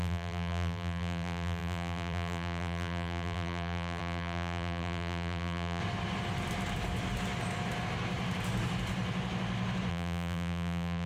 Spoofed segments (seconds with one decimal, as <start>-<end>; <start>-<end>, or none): 0.0-5.8; 9.9-11.1